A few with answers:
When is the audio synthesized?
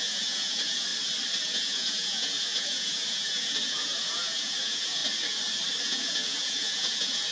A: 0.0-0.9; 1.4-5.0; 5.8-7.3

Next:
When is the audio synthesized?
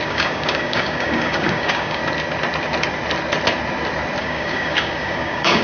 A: 0.0-2.0; 4.2-5.6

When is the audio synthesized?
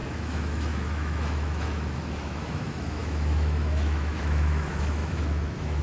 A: 0.0-5.8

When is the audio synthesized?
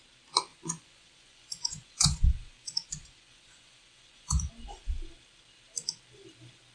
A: 0.5-4.5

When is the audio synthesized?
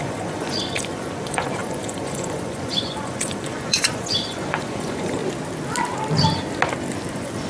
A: 0.0-5.2; 7.1-7.5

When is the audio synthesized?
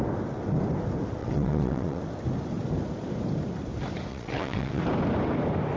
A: 1.2-2.0; 4.1-4.8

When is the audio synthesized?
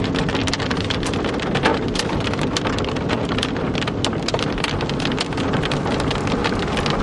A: 0.0-6.4